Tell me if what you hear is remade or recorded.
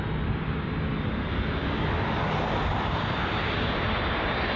recorded